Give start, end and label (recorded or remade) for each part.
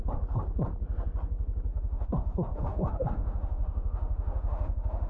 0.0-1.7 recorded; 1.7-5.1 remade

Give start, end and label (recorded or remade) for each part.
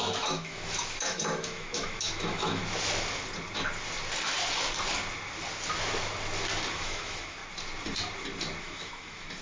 0.0-2.6 remade; 2.6-6.7 recorded; 6.7-7.4 remade; 7.4-8.6 recorded; 8.6-9.4 remade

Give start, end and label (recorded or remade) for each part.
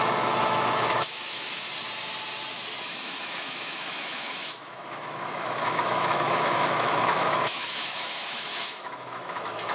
0.0-1.7 remade; 1.7-2.9 recorded; 2.9-9.7 remade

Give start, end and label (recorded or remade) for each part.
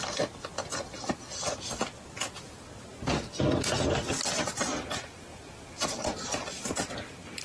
0.0-7.4 recorded